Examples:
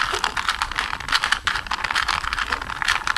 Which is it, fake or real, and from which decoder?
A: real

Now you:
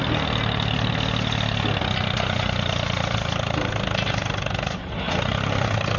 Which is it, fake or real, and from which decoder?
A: real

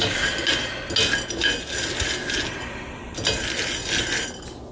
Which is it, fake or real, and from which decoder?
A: real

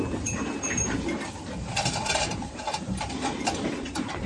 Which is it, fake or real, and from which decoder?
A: fake, vocoder, BigVGAN v2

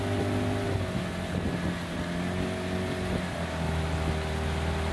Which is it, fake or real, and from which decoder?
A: real